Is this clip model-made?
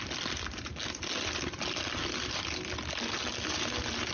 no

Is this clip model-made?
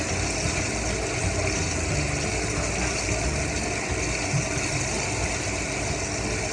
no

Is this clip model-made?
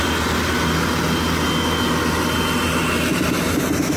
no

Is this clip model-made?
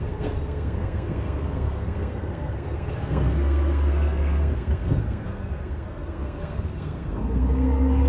yes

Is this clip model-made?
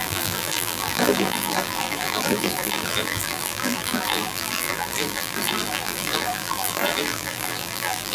yes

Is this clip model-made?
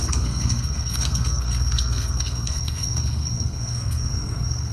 yes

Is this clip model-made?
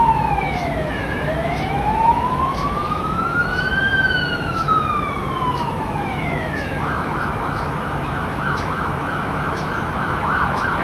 yes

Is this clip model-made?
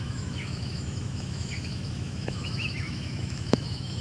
yes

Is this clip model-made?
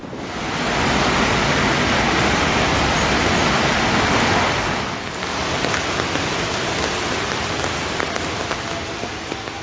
no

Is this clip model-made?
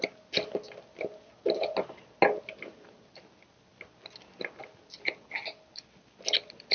no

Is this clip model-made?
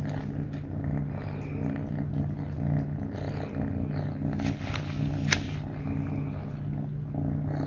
no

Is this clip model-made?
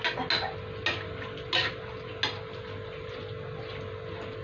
no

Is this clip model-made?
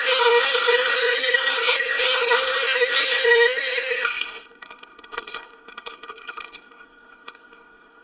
yes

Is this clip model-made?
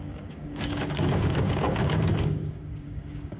yes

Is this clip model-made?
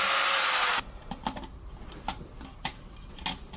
no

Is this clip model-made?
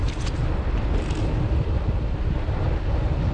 yes